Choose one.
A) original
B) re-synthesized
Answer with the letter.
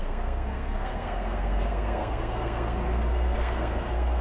B